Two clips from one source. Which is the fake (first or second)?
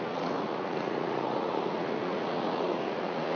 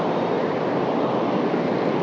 first